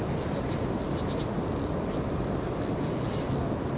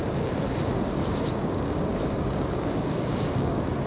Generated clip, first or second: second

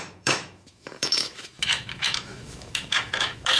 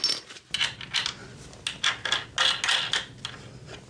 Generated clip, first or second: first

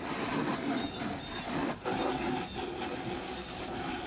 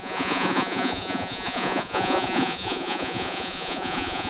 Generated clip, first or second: second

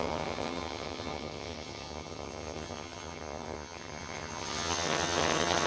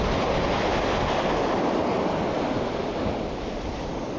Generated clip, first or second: first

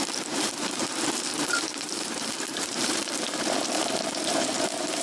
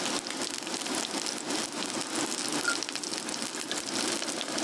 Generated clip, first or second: first